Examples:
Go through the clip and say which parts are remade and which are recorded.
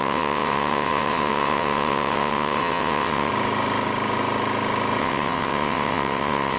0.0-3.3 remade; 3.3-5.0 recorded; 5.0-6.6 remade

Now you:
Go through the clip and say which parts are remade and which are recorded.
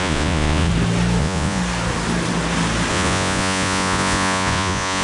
0.0-0.7 remade; 0.7-1.2 recorded; 1.2-1.6 remade; 1.6-2.9 recorded; 2.9-5.0 remade